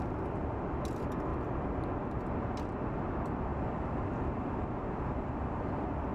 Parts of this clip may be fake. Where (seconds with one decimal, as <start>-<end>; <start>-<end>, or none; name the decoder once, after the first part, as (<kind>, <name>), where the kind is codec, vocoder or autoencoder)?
none